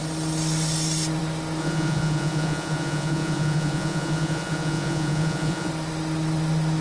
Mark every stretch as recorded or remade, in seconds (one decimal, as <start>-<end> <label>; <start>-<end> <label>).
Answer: 0.0-1.6 recorded; 1.6-5.7 remade; 5.7-6.8 recorded